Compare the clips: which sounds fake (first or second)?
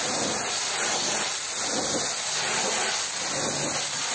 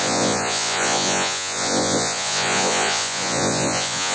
second